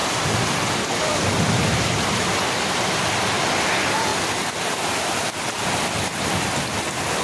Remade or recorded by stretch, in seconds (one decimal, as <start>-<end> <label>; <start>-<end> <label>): 0.0-3.5 remade; 3.5-4.1 recorded; 4.1-6.8 remade; 6.8-7.2 recorded